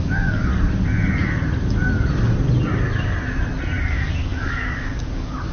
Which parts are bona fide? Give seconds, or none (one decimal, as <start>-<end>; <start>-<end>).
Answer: 0.5-3.8